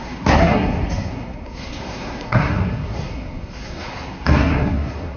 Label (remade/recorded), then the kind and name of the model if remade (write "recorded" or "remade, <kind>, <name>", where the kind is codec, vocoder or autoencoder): remade, codec, SNAC